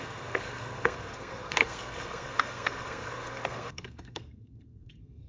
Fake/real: fake